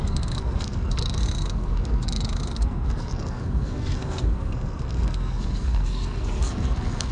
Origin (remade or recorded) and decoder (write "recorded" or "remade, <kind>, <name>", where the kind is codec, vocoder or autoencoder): remade, codec, SNAC